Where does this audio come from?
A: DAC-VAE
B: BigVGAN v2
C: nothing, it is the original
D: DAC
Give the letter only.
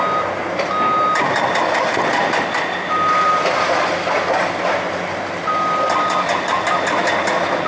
C